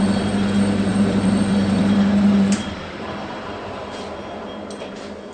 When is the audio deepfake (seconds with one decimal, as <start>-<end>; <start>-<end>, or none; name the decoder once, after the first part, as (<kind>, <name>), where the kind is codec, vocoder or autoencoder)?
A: 0.9-3.8 (vocoder, BigVGAN v2)